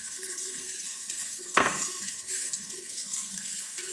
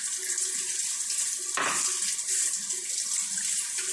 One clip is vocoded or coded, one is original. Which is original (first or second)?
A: second